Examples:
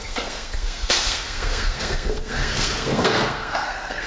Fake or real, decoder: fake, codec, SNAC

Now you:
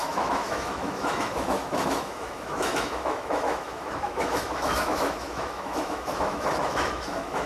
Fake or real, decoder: fake, autoencoder, DAC-VAE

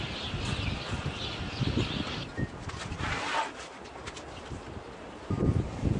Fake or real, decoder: real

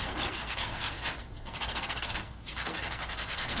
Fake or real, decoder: fake, codec, SNAC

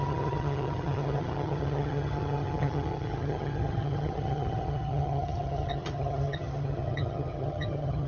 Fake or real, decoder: fake, vocoder, HiFi-GAN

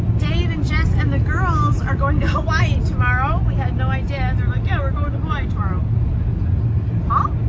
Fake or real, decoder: real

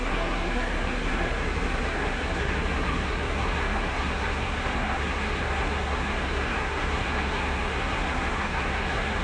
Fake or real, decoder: fake, codec, SNAC